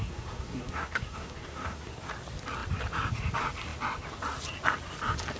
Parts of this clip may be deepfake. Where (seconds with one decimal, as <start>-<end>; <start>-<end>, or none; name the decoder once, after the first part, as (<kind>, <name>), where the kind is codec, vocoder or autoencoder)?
0.0-1.9 (codec, SNAC)